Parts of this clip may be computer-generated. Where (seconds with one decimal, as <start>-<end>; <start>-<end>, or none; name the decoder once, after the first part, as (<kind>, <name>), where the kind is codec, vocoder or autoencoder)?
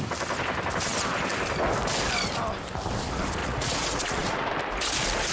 3.4-4.5 (vocoder, Vocos)